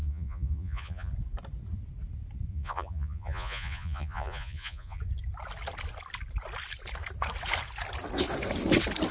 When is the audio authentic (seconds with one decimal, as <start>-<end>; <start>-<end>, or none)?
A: 1.1-2.5; 5.0-9.1